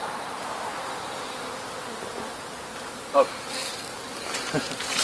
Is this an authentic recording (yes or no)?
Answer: yes